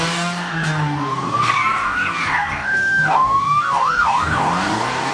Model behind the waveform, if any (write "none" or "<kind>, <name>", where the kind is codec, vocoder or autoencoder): codec, DAC